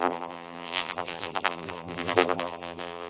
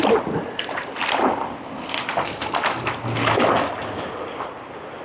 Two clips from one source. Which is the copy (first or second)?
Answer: first